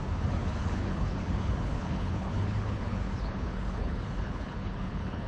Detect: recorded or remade remade